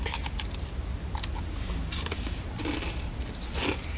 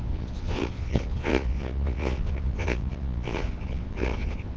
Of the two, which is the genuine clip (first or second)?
first